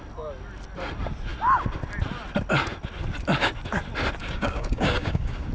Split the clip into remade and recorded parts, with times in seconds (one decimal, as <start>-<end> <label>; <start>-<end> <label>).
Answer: 0.0-4.2 recorded; 4.2-5.5 remade